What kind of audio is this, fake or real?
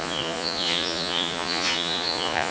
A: fake